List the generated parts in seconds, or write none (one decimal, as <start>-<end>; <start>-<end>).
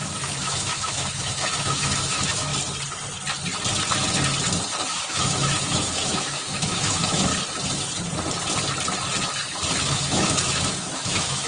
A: 0.0-2.5; 4.8-7.3; 9.9-11.5